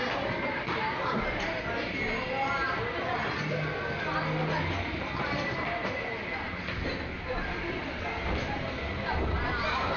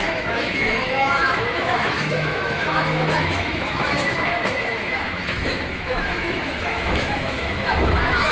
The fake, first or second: second